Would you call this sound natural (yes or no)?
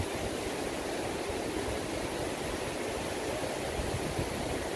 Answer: yes